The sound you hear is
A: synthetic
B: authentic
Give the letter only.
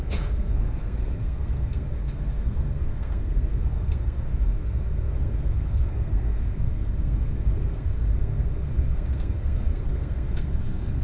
A